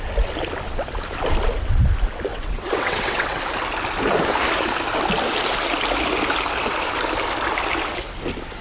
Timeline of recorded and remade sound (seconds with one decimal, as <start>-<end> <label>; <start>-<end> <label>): 0.0-2.3 recorded; 2.3-3.4 remade; 3.4-8.6 recorded

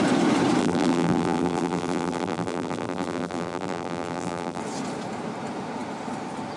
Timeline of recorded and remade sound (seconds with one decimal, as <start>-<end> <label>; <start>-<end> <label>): 0.0-0.6 recorded; 0.6-4.6 remade; 4.6-6.6 recorded

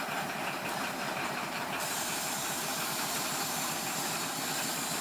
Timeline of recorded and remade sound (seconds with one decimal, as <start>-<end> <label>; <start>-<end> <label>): 0.0-0.8 recorded; 0.8-3.8 remade; 3.8-5.0 recorded

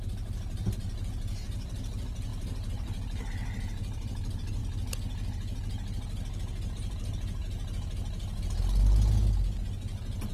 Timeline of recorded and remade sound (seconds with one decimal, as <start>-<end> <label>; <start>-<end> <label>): 0.0-4.6 remade; 4.6-6.7 recorded; 6.7-7.4 remade; 7.4-9.7 recorded; 9.7-10.3 remade

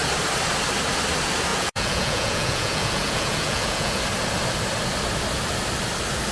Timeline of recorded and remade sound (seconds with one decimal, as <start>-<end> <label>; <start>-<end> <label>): 0.0-1.5 recorded; 1.5-4.0 remade; 4.0-6.3 recorded